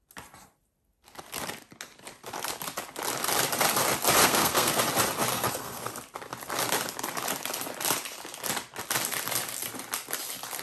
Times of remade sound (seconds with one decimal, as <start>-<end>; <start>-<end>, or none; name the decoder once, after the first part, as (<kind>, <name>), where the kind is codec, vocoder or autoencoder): 4.2-4.8 (codec, SNAC); 5.3-5.9